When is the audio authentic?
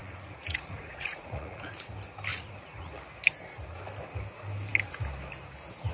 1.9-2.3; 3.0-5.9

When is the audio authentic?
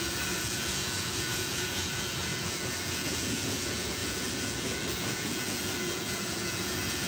none